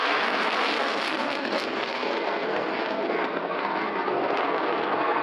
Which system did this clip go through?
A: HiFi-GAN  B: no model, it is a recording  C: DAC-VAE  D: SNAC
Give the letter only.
D